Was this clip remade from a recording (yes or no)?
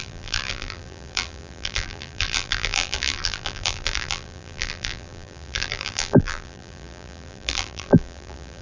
yes